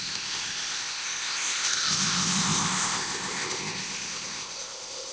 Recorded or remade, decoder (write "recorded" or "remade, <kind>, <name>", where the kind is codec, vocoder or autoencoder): remade, codec, ZipCodec